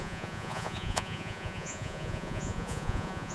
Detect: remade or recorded remade